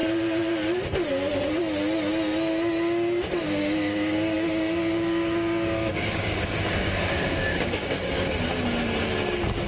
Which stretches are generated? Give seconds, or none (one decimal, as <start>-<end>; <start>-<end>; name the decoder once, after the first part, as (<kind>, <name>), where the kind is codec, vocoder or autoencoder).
3.4-8.1 (codec, DAC)